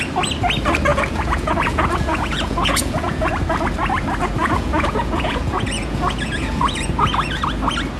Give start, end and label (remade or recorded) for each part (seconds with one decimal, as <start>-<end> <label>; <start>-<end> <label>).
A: 0.0-0.9 recorded; 0.9-3.3 remade; 3.3-4.4 recorded; 4.4-7.4 remade; 7.4-8.0 recorded

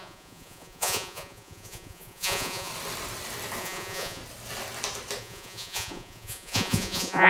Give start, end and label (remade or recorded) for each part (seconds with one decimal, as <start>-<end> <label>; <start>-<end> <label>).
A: 0.0-2.7 remade; 2.7-3.6 recorded; 3.6-4.2 remade; 4.2-5.2 recorded; 5.2-7.3 remade

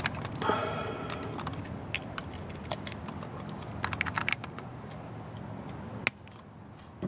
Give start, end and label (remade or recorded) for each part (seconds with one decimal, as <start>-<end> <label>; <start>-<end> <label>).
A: 0.0-4.4 recorded; 4.4-5.1 remade; 5.1-7.1 recorded